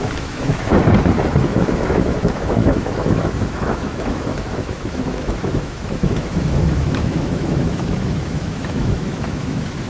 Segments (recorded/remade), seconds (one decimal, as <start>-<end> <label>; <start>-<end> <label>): 0.0-0.7 remade; 0.7-1.4 recorded; 1.4-9.9 remade